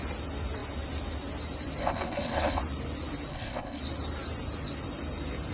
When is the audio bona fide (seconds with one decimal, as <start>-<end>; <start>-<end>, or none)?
0.0-1.8; 2.6-3.3; 3.8-5.5